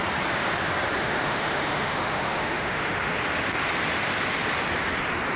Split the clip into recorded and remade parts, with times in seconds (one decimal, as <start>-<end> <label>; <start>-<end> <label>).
0.0-1.0 recorded; 1.0-3.1 remade; 3.1-5.4 recorded